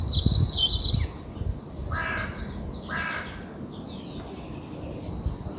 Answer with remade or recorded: recorded